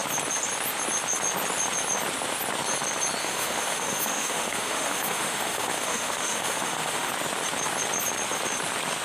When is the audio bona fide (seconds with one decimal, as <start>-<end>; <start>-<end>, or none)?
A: 0.0-3.2; 7.1-9.0